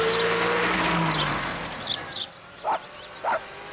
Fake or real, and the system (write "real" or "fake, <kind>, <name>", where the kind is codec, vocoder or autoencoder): real